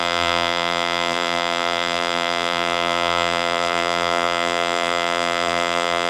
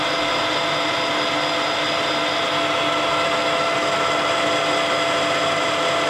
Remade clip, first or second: first